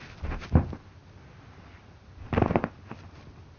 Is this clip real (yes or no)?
yes